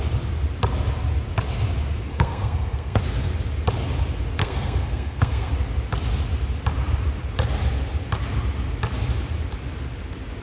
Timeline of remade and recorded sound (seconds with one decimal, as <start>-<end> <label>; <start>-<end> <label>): 0.0-2.1 recorded; 2.1-3.0 remade; 3.0-4.4 recorded; 4.4-5.5 remade; 5.5-10.4 recorded